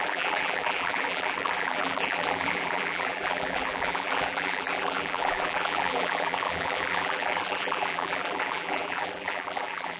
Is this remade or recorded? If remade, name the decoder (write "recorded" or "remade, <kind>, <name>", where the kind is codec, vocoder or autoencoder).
remade, vocoder, BigVGAN v2